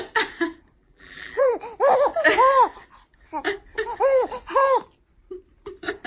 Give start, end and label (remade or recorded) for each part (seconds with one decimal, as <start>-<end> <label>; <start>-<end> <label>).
0.0-0.8 recorded; 0.8-1.5 remade; 1.5-6.1 recorded